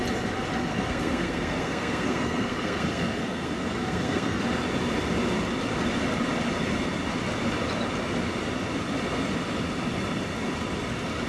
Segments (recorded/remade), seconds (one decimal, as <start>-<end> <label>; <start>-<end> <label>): 0.0-0.7 recorded; 0.7-4.4 remade; 4.4-11.3 recorded